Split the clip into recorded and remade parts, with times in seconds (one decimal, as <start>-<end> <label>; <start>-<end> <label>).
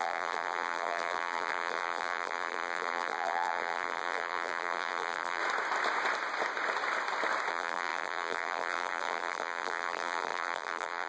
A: 0.0-5.4 remade; 5.4-7.5 recorded; 7.5-11.1 remade